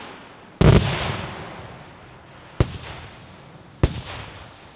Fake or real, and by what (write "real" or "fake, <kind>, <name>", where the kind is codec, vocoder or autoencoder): real